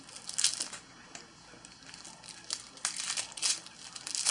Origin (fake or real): real